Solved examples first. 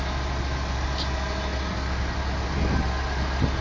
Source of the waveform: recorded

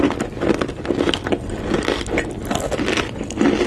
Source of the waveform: recorded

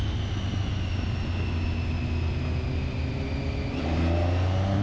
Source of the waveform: recorded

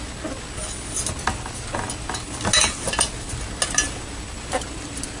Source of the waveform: recorded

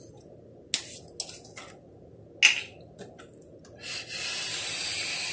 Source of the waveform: recorded